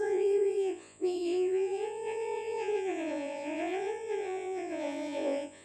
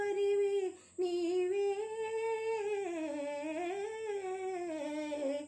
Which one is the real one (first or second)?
second